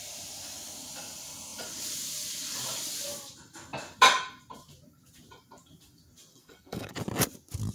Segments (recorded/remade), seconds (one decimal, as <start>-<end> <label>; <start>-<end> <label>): 0.0-6.3 recorded; 6.3-6.9 remade; 6.9-7.7 recorded

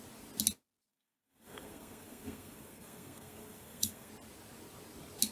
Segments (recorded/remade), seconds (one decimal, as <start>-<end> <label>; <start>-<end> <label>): 0.0-0.9 recorded; 0.9-4.1 remade; 4.1-5.3 recorded

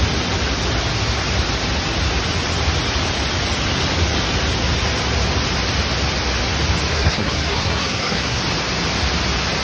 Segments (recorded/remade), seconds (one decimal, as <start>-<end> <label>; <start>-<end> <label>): 0.0-6.9 recorded; 6.9-8.4 remade; 8.4-9.6 recorded

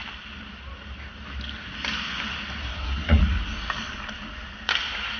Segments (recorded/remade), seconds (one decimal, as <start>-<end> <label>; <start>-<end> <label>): 0.0-2.7 recorded; 2.7-3.2 remade; 3.2-5.2 recorded